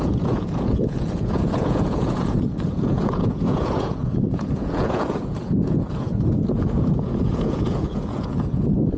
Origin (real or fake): fake